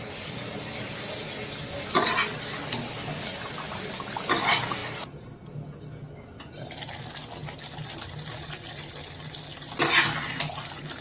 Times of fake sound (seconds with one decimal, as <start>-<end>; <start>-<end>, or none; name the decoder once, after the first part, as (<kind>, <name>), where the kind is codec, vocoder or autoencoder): none